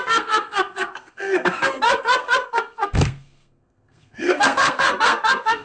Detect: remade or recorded remade